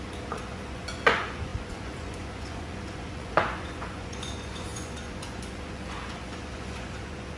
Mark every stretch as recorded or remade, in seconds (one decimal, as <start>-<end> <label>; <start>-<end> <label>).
0.0-7.4 remade